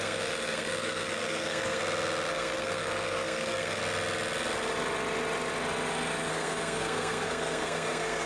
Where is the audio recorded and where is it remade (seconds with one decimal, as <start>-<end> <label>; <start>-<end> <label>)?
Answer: 0.0-1.8 remade; 1.8-2.3 recorded; 2.3-3.8 remade; 3.8-6.3 recorded; 6.3-8.3 remade